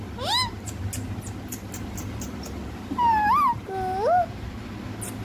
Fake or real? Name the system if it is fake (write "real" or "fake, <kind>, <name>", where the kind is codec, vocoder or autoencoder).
real